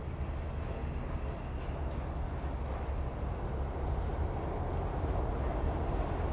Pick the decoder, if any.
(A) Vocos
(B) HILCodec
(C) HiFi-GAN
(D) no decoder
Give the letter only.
D